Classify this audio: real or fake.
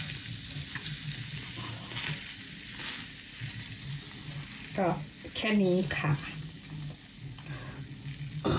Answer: real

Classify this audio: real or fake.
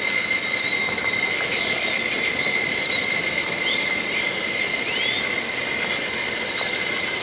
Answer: real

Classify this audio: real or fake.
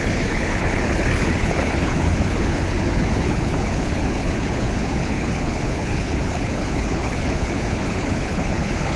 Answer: fake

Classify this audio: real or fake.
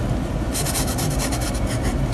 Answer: real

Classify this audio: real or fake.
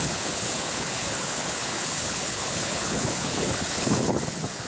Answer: fake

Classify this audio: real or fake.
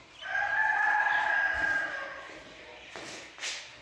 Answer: real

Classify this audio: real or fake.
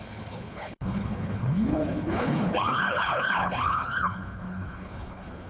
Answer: fake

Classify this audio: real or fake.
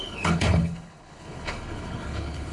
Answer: fake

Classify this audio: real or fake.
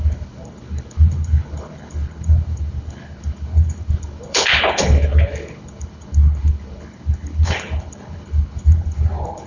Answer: fake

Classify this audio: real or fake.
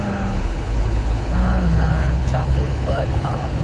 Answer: fake